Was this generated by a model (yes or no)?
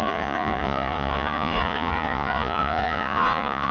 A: yes